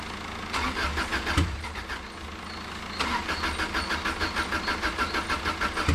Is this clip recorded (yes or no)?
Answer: yes